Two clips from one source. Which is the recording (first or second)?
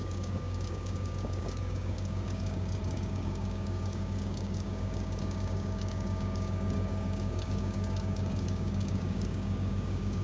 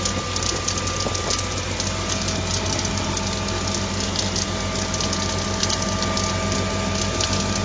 second